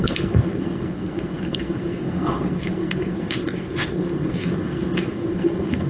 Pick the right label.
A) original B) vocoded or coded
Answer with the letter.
B